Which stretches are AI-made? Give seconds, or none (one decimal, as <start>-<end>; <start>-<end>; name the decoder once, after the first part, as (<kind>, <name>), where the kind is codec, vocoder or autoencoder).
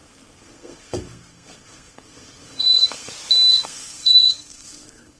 0.0-3.1 (codec, SNAC); 3.5-5.2